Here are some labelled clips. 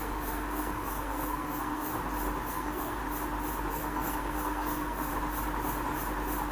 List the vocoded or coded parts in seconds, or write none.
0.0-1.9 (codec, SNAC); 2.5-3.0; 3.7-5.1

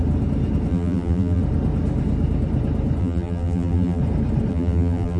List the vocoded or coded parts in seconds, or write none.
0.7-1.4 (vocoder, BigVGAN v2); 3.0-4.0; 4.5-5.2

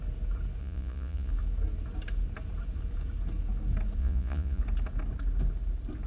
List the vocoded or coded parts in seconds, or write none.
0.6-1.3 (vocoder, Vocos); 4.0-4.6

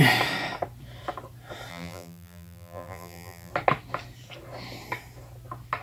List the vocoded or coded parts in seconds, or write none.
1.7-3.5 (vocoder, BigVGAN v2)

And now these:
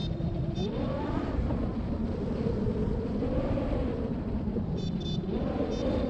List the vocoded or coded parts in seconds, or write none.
0.0-1.1 (vocoder, BigVGAN v2); 1.7-5.4

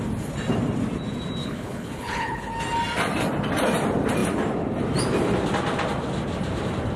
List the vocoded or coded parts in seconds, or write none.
1.4-2.5 (codec, HILCodec)

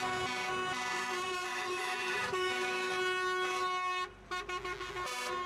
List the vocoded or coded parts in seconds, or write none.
1.5-2.9 (autoencoder, DAC-VAE)